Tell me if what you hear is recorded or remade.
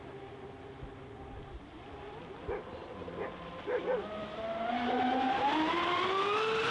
recorded